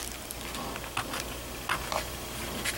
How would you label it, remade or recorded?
recorded